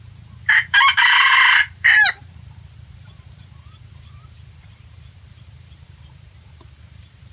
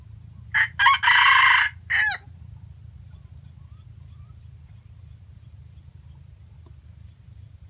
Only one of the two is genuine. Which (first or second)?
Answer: second